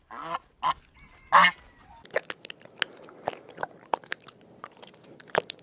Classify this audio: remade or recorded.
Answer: recorded